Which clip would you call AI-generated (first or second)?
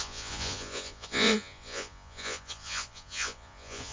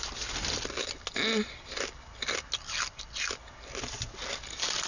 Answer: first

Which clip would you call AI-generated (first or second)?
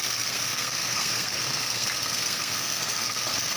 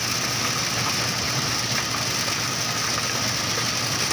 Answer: first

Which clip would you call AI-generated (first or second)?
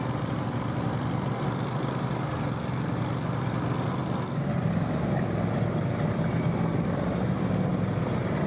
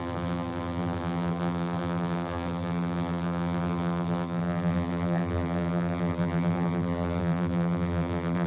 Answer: second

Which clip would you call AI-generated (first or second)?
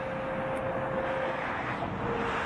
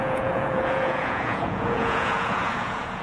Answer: second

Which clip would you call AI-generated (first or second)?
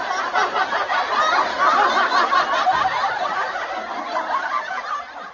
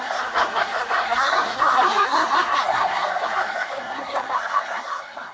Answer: second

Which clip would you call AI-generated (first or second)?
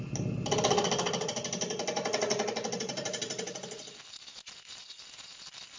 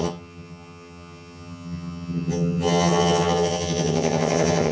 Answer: second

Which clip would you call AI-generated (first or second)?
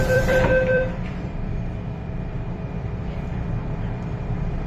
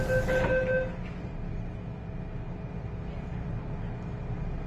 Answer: first